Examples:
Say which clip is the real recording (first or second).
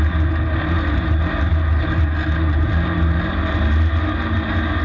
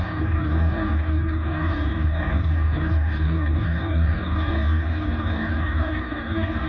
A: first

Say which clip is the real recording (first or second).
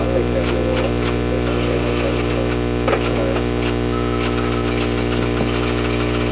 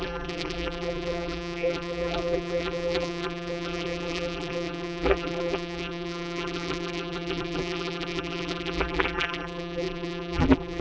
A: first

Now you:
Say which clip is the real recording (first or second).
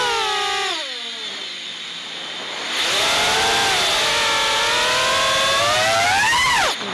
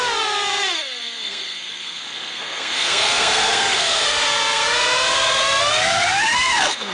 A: first